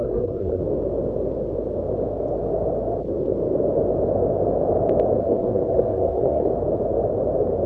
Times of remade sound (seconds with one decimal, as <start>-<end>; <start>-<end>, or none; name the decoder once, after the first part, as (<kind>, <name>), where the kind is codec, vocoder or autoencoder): 0.0-0.6 (codec, SNAC); 5.2-6.5